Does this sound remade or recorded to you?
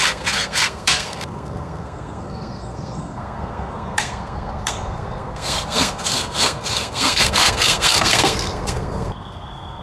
remade